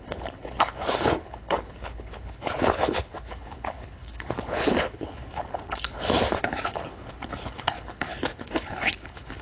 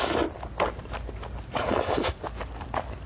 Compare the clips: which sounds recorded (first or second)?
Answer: second